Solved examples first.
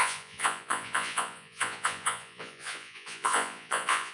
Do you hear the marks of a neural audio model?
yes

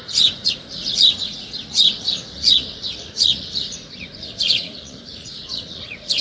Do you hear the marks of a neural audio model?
yes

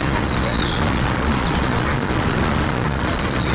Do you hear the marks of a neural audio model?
yes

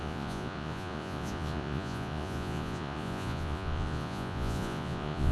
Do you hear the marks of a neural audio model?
yes